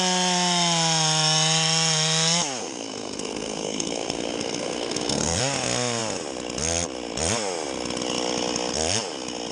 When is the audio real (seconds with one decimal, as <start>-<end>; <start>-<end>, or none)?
0.0-2.6; 5.4-9.5